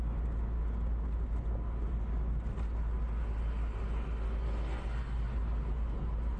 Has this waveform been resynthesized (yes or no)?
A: no